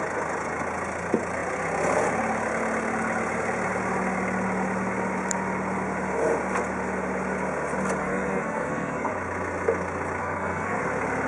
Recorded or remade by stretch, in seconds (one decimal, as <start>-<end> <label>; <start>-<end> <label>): 0.0-8.0 recorded; 8.0-9.1 remade; 9.1-10.2 recorded; 10.2-10.8 remade; 10.8-11.3 recorded